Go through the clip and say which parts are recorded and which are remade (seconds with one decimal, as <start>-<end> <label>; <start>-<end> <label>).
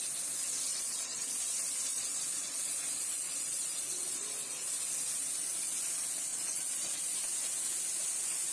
0.0-0.7 recorded; 0.7-1.4 remade; 1.4-1.9 recorded; 1.9-4.7 remade; 4.7-6.3 recorded; 6.3-7.0 remade; 7.0-8.5 recorded